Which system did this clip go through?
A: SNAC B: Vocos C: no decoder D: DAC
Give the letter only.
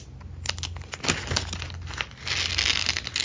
C